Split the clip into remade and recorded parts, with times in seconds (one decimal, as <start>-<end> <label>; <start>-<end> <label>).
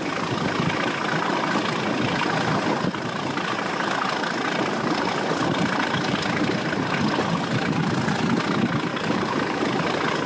0.0-8.9 recorded; 8.9-9.6 remade; 9.6-10.3 recorded